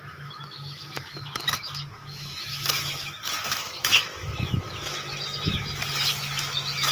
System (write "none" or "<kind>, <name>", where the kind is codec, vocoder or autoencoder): autoencoder, DAC-VAE